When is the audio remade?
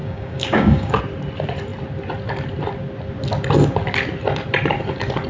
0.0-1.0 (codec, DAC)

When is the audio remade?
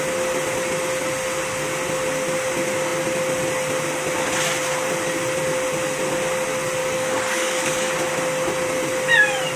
6.8-7.9 (codec, DAC)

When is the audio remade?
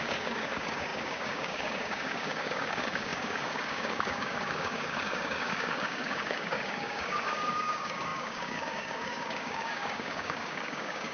0.0-11.1 (codec, DAC)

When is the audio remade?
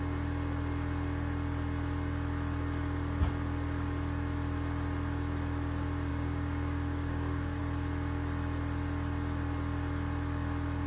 6.1-7.6 (codec, DAC)